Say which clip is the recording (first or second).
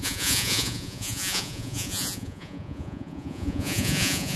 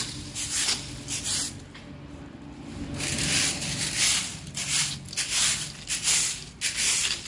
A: second